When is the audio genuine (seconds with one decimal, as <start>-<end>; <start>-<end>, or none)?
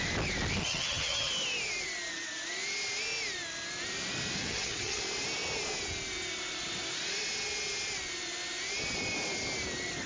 0.0-0.6; 1.3-4.4; 5.0-10.1